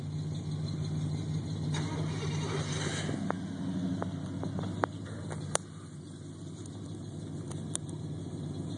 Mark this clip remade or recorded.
recorded